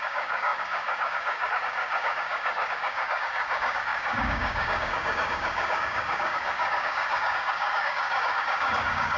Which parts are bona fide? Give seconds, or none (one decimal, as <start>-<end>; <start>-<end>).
none